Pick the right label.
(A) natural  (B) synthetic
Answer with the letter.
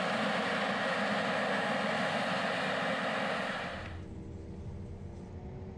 A